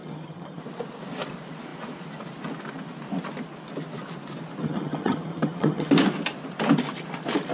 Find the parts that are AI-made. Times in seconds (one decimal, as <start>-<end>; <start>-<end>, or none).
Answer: 0.0-0.6; 4.6-5.9